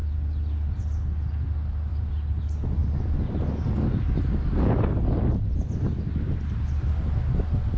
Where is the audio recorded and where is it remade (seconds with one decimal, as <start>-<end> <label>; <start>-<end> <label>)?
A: 0.0-7.8 recorded